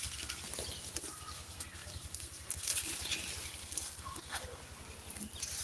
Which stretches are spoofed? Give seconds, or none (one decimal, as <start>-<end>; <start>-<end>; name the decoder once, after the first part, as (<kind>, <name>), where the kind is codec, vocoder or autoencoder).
0.0-0.5 (codec, SNAC); 1.0-2.9; 3.4-4.6